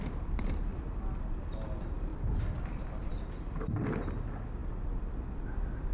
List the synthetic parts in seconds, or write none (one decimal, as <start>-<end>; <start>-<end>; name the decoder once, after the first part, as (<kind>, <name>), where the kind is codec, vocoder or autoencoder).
0.7-1.2 (vocoder, BigVGAN v2); 2.1-3.5